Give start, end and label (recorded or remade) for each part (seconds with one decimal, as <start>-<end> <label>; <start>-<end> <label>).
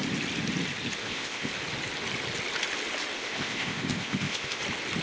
0.0-1.0 recorded; 1.0-1.5 remade; 1.5-3.2 recorded; 3.2-4.6 remade; 4.6-5.0 recorded